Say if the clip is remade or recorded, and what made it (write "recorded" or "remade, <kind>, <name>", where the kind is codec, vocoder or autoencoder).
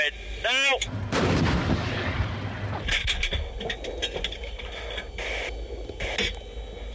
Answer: recorded